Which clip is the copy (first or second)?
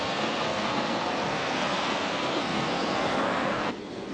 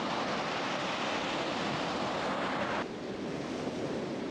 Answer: first